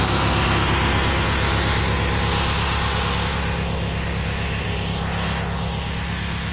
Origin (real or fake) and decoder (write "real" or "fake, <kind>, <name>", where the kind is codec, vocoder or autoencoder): real